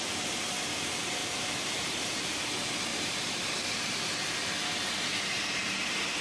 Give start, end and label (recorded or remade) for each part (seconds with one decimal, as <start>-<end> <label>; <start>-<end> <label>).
0.0-1.2 recorded; 1.2-2.4 remade; 2.4-2.9 recorded; 2.9-3.5 remade; 3.5-6.2 recorded